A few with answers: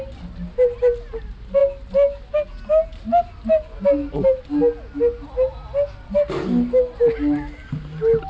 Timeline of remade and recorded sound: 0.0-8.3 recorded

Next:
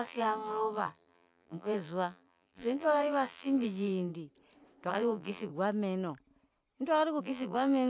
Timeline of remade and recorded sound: 0.0-4.1 remade; 4.1-4.9 recorded; 4.9-5.5 remade; 5.5-7.2 recorded; 7.2-7.9 remade

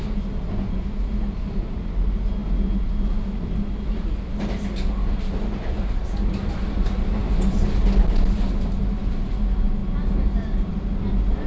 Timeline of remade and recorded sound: 0.0-9.8 recorded; 9.8-10.7 remade; 10.7-11.5 recorded

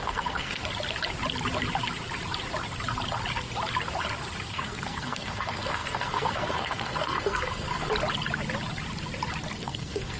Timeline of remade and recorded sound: 0.0-0.6 remade; 0.6-4.5 recorded; 4.5-7.9 remade; 7.9-9.6 recorded; 9.6-10.2 remade

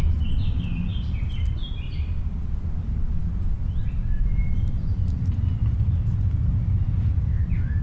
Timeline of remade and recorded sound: 0.0-7.8 recorded

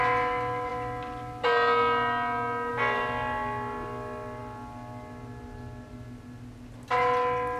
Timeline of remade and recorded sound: 0.0-7.6 recorded

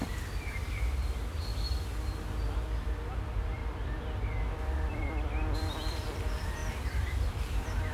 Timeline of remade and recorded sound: 0.0-0.6 remade; 0.6-3.1 recorded; 3.1-3.6 remade; 3.6-4.9 recorded; 4.9-7.9 remade

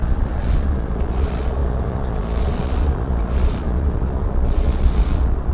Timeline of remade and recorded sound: 0.0-5.5 remade